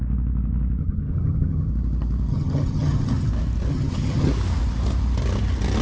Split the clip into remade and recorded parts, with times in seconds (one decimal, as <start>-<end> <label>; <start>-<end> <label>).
0.0-0.8 recorded; 0.8-1.7 remade; 1.7-2.3 recorded; 2.3-3.3 remade; 3.3-3.7 recorded; 3.7-4.3 remade; 4.3-5.8 recorded